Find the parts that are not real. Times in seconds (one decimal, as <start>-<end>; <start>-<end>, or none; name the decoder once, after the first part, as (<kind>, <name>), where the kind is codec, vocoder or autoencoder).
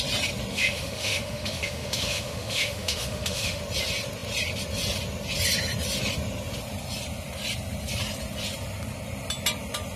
0.5-3.6 (autoencoder, DAC-VAE)